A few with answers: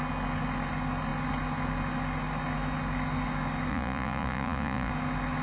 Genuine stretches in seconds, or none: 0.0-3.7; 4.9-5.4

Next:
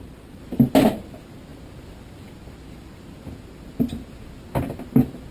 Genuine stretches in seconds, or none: 0.0-5.3

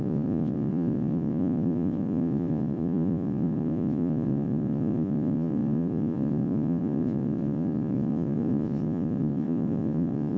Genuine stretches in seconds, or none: none

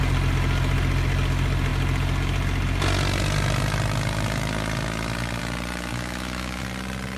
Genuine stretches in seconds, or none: 0.0-5.9; 6.6-7.2

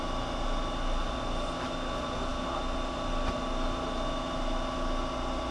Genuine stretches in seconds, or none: 0.0-5.5

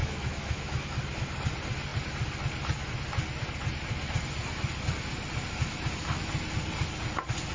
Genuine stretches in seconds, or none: 0.9-7.5

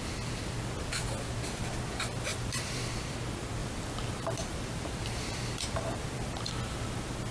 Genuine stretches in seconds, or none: 0.0-2.3; 3.1-3.6; 6.3-7.3